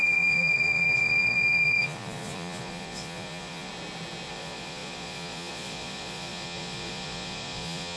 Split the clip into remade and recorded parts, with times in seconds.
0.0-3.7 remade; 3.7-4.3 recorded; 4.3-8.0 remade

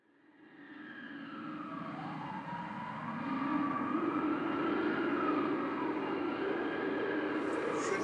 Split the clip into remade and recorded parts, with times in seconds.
0.0-3.5 recorded; 3.5-4.2 remade; 4.2-8.0 recorded

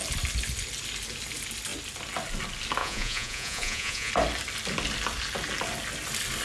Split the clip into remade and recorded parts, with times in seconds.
0.0-2.8 recorded; 2.8-4.1 remade; 4.1-6.4 recorded

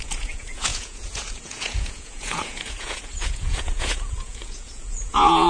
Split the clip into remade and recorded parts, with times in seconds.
0.0-5.5 remade

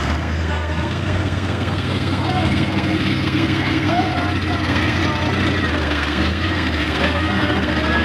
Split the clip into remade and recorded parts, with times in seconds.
0.0-4.1 remade; 4.1-4.6 recorded; 4.6-5.0 remade; 5.0-5.7 recorded; 5.7-8.0 remade

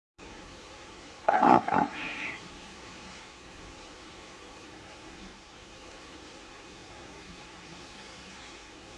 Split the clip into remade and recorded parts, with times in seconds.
0.0-9.0 remade